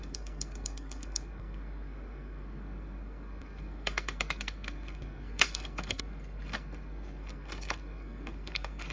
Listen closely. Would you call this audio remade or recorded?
remade